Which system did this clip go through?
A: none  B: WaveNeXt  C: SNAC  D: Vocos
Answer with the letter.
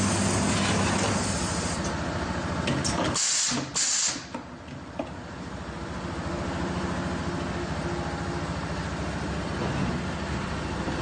A